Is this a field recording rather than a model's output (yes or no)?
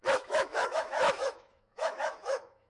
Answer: no